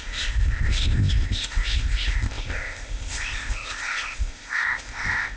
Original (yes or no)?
no